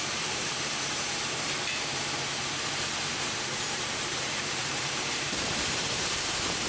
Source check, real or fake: fake